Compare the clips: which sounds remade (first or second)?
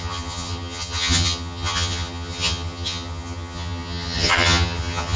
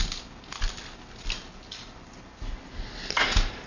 first